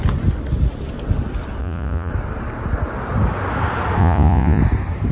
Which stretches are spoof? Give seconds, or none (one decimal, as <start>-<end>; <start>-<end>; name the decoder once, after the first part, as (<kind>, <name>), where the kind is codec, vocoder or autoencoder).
1.6-2.1 (vocoder, Vocos); 4.0-4.6